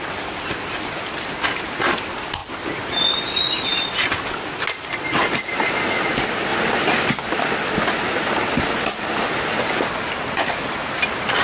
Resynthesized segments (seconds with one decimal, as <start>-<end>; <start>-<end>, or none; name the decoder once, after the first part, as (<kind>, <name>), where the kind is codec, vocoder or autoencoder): none